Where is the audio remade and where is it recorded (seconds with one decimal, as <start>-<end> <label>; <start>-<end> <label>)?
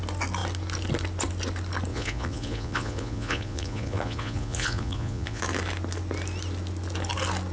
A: 0.0-1.9 recorded; 1.9-5.4 remade; 5.4-7.5 recorded